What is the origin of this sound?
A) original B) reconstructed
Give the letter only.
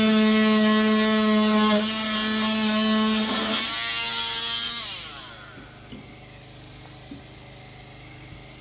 A